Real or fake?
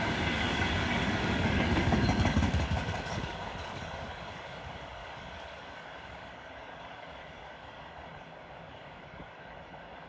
fake